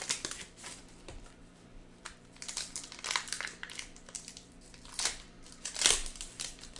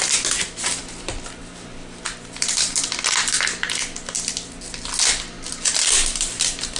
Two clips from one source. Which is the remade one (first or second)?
first